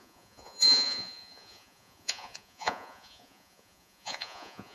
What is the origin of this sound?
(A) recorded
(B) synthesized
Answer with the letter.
B